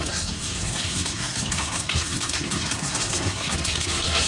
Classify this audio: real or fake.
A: fake